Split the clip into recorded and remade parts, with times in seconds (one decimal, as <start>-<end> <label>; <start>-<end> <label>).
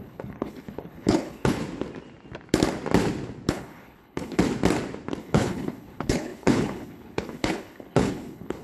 0.0-1.6 remade; 1.6-3.5 recorded; 3.5-4.4 remade; 4.4-5.2 recorded; 5.2-8.6 remade